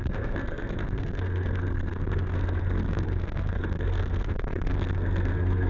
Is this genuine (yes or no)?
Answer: no